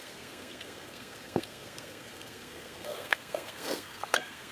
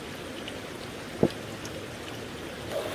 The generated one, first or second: first